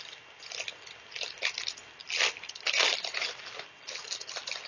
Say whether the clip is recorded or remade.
recorded